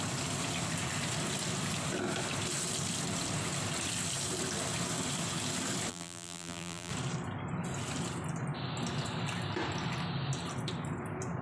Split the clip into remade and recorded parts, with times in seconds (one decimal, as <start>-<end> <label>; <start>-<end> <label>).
0.0-5.9 recorded; 5.9-6.9 remade; 6.9-11.4 recorded